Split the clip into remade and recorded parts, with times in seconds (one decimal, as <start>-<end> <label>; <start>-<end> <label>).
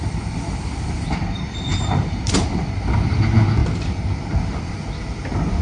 0.0-1.7 recorded; 1.7-2.3 remade; 2.3-5.6 recorded